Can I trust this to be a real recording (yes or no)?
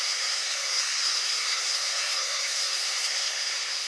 no